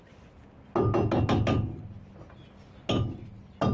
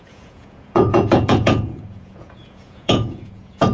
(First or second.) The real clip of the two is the first